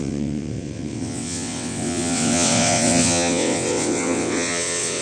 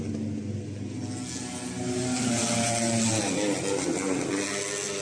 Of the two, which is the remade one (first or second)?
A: first